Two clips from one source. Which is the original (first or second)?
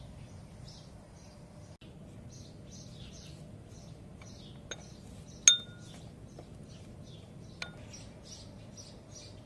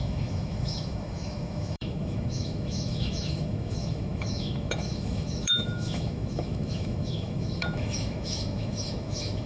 first